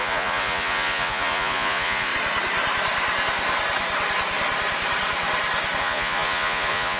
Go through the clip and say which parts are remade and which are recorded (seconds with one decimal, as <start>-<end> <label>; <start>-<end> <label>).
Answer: 0.0-2.1 remade; 2.1-5.8 recorded; 5.8-7.0 remade